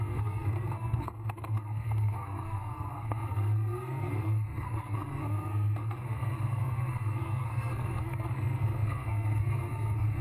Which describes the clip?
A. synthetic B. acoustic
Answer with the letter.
A